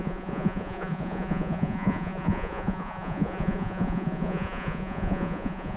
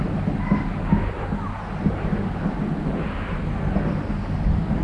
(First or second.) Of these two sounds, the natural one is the second